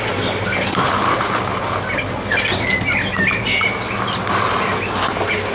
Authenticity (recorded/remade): recorded